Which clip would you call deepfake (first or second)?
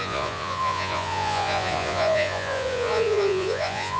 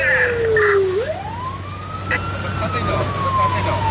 first